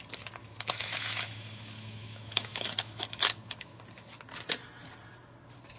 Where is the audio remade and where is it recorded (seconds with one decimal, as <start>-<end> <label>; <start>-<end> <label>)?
0.0-0.4 recorded; 0.4-3.8 remade; 3.8-5.8 recorded